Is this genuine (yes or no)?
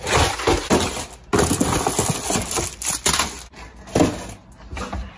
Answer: yes